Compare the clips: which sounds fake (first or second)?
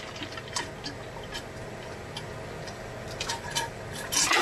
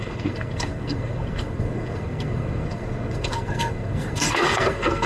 second